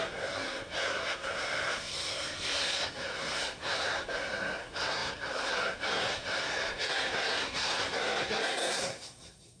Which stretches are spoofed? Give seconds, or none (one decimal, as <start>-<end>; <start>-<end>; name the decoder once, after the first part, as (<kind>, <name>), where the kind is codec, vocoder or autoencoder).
0.0-9.6 (codec, SNAC)